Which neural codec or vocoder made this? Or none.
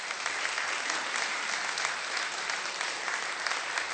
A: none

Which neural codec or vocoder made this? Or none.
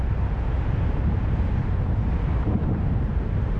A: vocoder, BigVGAN v2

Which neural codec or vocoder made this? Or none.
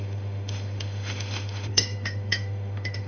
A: autoencoder, DAC-VAE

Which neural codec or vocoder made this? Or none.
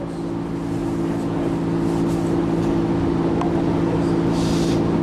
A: none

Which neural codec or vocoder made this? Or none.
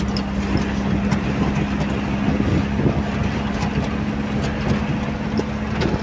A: none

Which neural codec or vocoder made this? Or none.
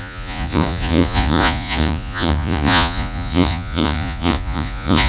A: vocoder, Vocos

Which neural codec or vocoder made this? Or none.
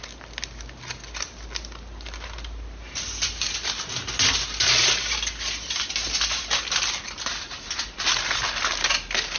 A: none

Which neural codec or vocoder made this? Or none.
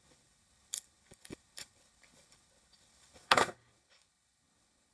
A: codec, HILCodec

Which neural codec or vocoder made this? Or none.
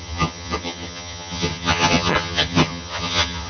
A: vocoder, HiFi-GAN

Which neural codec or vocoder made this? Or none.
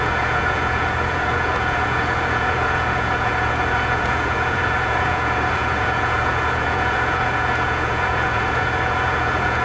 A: vocoder, Vocos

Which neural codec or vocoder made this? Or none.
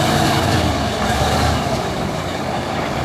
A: codec, DAC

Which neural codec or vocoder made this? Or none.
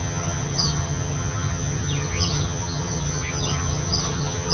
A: vocoder, HiFi-GAN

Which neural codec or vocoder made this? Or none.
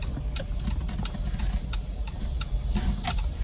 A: vocoder, BigVGAN v2